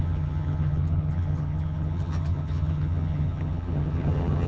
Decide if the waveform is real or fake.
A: fake